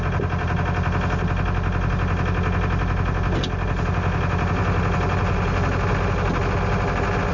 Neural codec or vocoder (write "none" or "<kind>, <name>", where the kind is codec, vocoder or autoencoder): none